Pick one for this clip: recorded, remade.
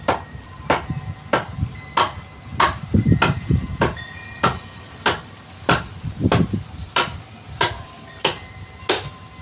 remade